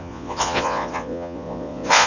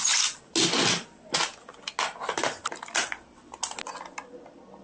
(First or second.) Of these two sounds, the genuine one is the second